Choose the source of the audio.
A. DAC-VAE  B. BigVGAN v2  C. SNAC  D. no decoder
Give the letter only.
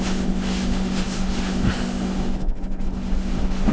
A